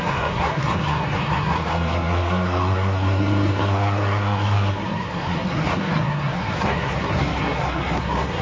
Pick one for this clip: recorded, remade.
remade